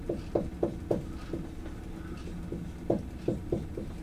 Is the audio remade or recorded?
recorded